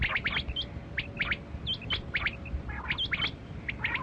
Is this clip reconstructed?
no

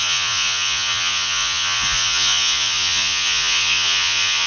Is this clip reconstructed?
yes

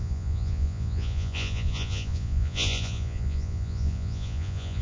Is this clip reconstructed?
yes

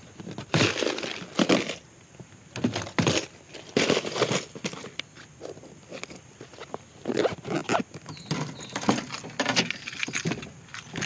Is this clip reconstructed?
no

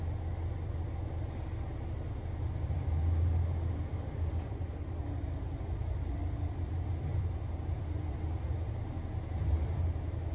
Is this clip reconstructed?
no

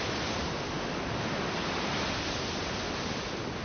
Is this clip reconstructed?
no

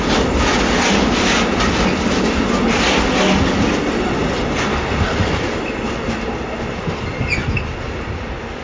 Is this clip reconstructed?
no